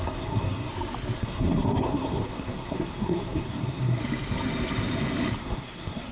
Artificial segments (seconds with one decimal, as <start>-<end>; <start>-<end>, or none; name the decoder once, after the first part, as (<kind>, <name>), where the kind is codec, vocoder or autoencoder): 0.0-0.7 (codec, SNAC); 1.2-4.0; 5.4-6.1